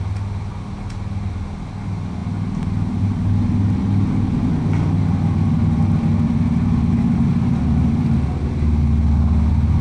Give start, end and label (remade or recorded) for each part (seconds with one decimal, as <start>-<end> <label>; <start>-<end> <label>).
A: 0.0-9.8 recorded